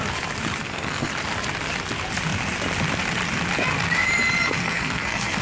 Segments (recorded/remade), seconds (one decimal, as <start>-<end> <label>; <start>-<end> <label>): 0.0-0.6 recorded; 0.6-1.1 remade; 1.1-4.6 recorded; 4.6-5.4 remade